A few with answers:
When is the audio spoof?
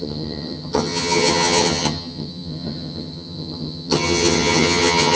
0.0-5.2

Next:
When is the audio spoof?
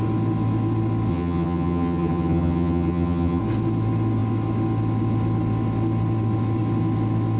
1.1-3.4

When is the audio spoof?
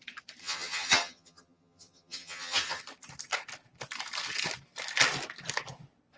0.4-2.8